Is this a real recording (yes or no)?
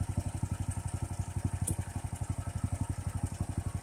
yes